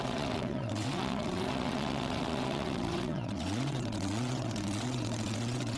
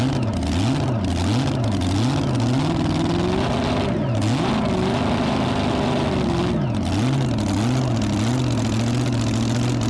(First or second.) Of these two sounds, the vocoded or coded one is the first